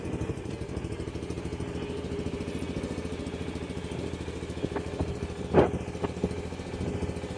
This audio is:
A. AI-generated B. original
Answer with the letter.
B